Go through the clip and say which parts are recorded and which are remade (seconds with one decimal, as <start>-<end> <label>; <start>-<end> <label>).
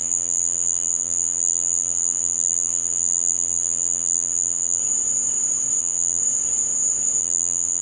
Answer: 0.0-4.8 remade; 4.8-5.8 recorded; 5.8-6.2 remade; 6.2-7.2 recorded; 7.2-7.8 remade